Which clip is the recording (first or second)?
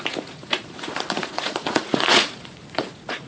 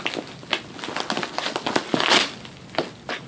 second